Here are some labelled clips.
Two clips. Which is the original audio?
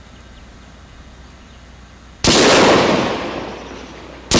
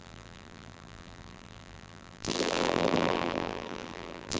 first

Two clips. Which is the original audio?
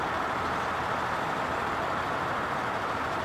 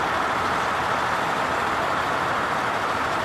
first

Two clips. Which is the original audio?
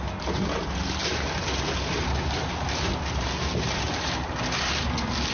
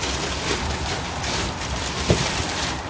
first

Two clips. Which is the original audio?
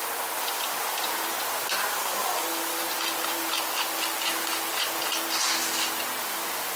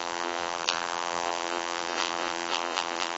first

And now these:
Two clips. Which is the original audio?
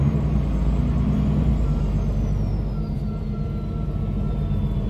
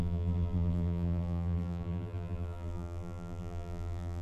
first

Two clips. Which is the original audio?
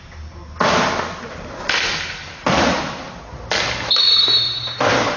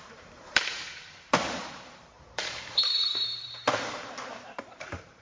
first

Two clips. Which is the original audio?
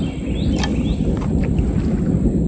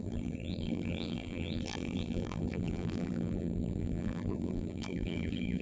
first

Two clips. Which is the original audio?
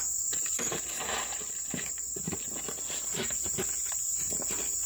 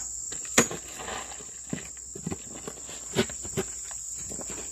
second